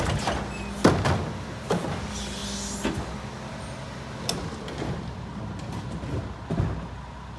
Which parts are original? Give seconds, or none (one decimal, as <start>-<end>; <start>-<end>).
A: 0.0-7.4